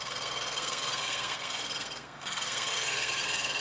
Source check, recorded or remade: remade